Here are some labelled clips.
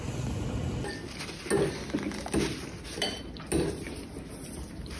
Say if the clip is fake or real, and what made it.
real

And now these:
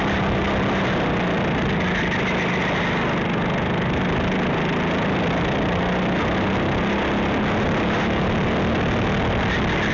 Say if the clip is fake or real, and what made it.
real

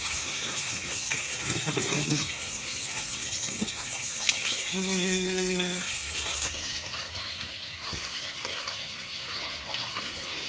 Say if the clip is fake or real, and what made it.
fake, codec, SNAC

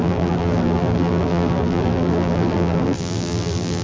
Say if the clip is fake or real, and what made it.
fake, vocoder, BigVGAN v2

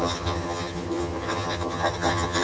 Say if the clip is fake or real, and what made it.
fake, vocoder, HiFi-GAN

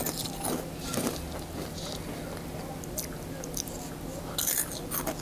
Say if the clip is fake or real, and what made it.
real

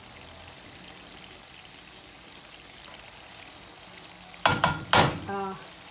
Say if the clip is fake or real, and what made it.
real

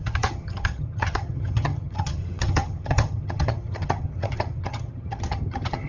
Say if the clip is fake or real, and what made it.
fake, vocoder, HiFi-GAN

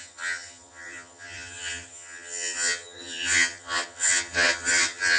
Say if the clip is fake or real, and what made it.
fake, vocoder, HiFi-GAN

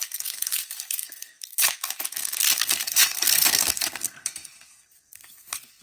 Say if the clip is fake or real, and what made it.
fake, codec, SNAC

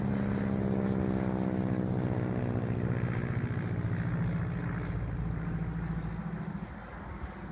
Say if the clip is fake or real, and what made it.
real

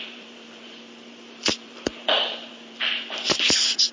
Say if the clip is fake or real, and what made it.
fake, vocoder, BigVGAN v2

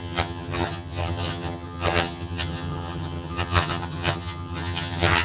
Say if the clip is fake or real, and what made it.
fake, vocoder, HiFi-GAN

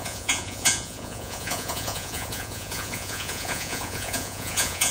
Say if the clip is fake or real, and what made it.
fake, vocoder, Vocos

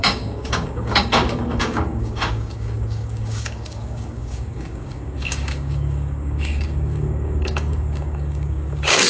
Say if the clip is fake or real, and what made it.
fake, codec, DAC